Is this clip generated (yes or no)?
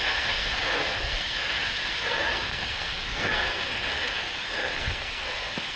yes